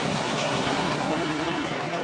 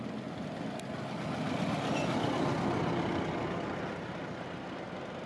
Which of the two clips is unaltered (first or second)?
second